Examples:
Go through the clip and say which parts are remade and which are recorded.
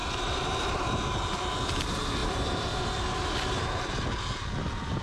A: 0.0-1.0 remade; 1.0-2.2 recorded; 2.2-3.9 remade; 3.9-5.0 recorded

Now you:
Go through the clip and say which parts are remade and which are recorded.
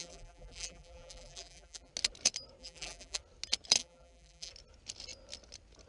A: 0.0-1.9 remade; 1.9-2.6 recorded; 2.6-3.2 remade; 3.2-3.8 recorded; 3.8-4.5 remade; 4.5-5.9 recorded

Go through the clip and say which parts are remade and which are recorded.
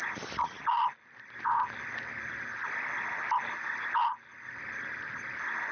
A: 0.0-4.3 recorded; 4.3-5.3 remade; 5.3-5.7 recorded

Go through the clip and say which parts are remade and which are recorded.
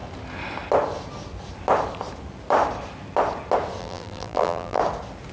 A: 0.0-3.8 recorded; 3.8-4.8 remade; 4.8-5.3 recorded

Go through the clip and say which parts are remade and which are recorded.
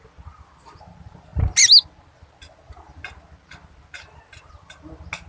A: 0.0-5.3 recorded